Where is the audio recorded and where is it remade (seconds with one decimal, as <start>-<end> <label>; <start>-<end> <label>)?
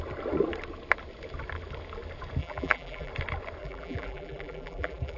0.0-2.4 recorded; 2.4-3.1 remade; 3.1-3.6 recorded; 3.6-5.2 remade